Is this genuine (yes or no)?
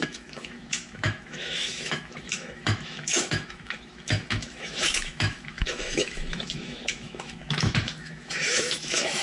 no